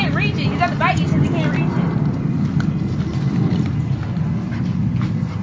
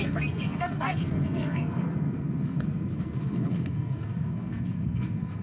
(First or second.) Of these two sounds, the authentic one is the first